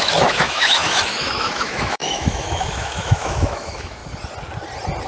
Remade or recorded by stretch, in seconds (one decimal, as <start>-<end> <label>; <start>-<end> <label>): 0.0-4.0 remade; 4.0-5.1 recorded